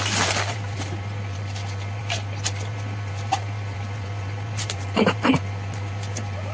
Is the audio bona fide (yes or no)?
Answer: no